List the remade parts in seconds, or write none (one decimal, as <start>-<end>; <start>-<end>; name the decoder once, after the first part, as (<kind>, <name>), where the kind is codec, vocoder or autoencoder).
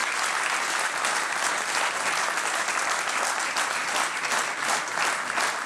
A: none